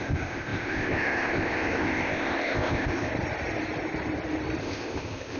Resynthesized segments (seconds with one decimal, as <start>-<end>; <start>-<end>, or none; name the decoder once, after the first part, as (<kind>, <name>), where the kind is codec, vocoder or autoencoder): 0.0-3.1 (codec, ZipCodec); 4.6-5.4